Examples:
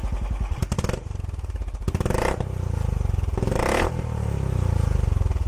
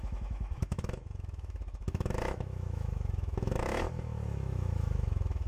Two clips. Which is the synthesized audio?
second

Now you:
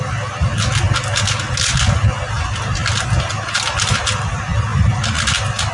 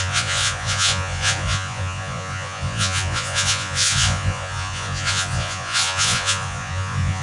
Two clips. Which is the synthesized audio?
second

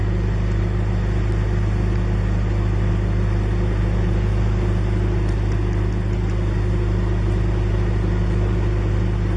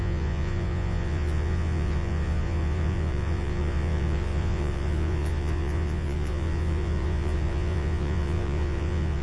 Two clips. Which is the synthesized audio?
second